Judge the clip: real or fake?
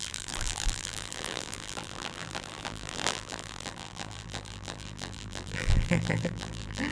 fake